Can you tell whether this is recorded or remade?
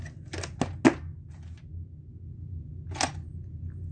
recorded